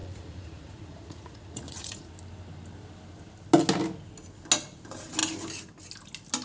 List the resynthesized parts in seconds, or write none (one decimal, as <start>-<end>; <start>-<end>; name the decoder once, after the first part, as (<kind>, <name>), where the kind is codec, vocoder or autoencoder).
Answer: 0.0-2.1 (vocoder, Vocos)